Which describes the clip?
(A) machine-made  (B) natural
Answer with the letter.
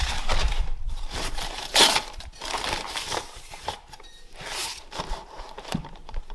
A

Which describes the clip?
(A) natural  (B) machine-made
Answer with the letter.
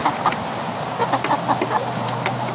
A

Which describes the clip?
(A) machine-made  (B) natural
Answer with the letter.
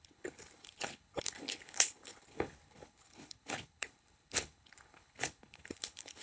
A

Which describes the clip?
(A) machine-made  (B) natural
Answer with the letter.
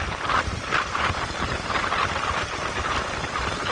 B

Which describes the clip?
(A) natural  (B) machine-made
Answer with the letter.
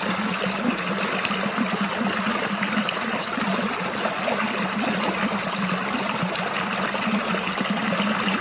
A